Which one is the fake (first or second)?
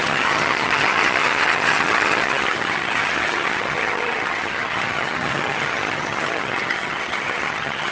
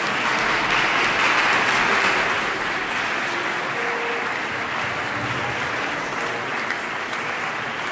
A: first